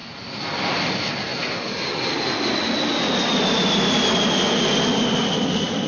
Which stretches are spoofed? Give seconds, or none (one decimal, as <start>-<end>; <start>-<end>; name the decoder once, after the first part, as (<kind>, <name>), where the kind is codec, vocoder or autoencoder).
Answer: none